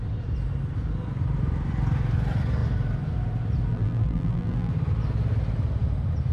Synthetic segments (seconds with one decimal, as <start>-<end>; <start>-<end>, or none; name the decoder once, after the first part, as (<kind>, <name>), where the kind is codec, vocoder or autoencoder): 3.7-4.7 (vocoder, BigVGAN v2)